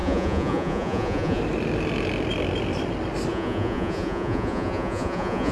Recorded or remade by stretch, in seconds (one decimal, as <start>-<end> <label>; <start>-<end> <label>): 0.0-1.4 remade; 1.4-3.3 recorded; 3.3-5.5 remade